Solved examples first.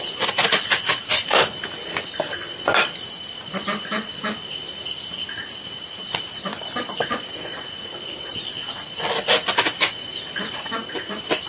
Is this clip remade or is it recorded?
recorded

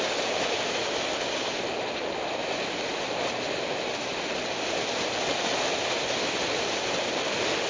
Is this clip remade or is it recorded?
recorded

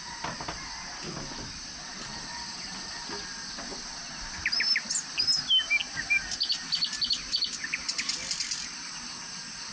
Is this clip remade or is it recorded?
recorded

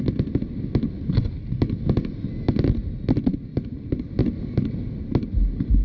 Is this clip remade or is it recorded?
recorded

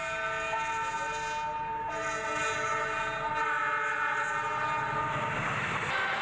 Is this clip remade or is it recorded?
recorded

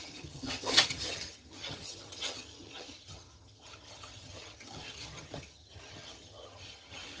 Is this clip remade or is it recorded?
remade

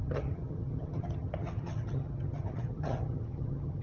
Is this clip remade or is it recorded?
remade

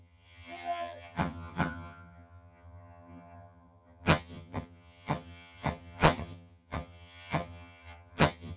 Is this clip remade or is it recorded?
remade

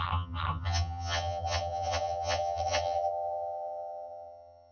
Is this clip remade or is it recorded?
remade